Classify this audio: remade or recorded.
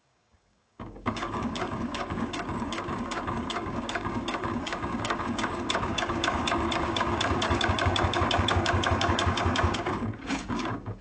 remade